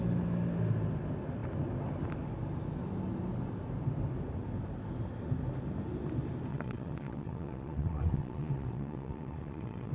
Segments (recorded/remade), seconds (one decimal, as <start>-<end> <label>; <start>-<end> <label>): 0.0-6.5 recorded; 6.5-9.9 remade